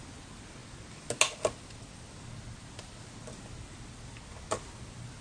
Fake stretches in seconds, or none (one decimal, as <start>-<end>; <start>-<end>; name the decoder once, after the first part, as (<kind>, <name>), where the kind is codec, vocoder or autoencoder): none